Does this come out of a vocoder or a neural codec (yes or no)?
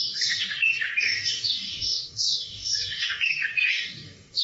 yes